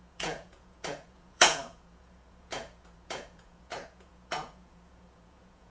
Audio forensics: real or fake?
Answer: fake